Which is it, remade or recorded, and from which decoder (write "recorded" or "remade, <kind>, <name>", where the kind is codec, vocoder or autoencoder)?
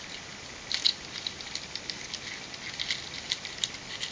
recorded